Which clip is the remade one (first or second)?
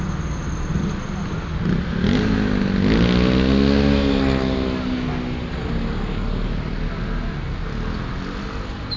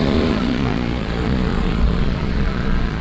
second